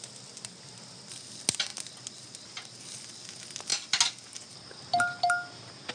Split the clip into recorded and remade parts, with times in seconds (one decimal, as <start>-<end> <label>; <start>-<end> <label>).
0.0-5.9 recorded